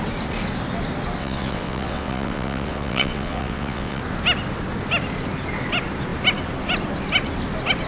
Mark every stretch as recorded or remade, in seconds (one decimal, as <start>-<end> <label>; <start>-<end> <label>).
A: 0.0-1.2 recorded; 1.2-4.0 remade; 4.0-7.9 recorded

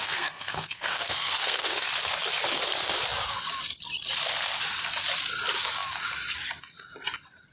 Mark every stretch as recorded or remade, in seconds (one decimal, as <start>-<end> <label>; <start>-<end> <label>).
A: 0.0-1.9 remade; 1.9-7.5 recorded

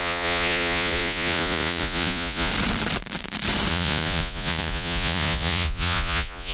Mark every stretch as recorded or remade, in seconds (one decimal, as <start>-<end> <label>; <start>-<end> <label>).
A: 0.0-2.5 remade; 2.5-3.7 recorded; 3.7-6.5 remade

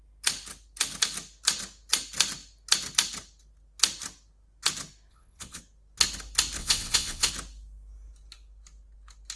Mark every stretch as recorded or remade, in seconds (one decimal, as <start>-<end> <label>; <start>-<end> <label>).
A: 0.0-5.1 recorded; 5.1-5.6 remade; 5.6-6.6 recorded; 6.6-7.3 remade; 7.3-9.4 recorded